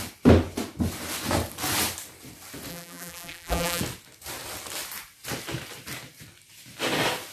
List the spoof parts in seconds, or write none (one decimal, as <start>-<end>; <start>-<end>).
2.7-3.8